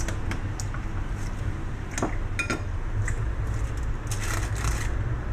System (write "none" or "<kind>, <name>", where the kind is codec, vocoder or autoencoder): none